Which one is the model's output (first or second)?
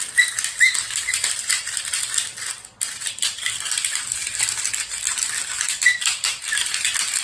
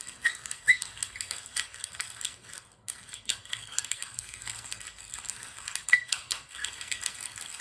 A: second